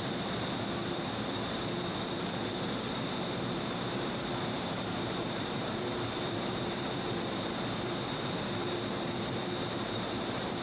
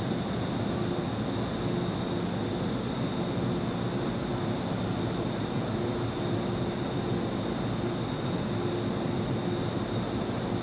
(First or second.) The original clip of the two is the second